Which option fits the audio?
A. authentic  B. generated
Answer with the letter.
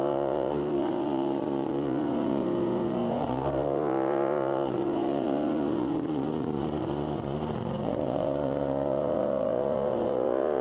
B